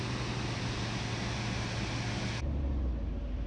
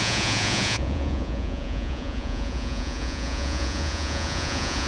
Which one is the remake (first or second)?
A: second